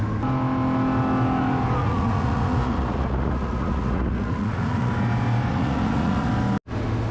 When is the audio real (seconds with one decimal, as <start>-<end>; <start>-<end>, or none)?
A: 0.0-1.8; 4.9-5.5; 6.3-7.1